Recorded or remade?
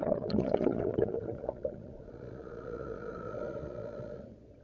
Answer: remade